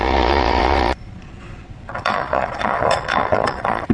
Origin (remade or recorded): remade